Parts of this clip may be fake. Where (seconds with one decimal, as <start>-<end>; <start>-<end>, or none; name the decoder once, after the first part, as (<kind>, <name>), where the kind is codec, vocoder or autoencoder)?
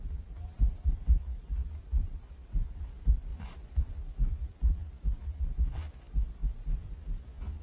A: none